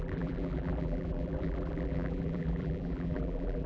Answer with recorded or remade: remade